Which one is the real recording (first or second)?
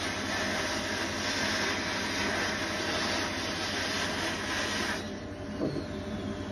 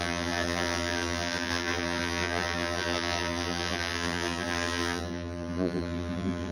first